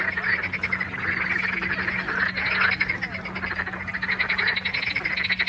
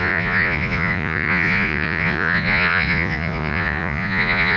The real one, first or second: first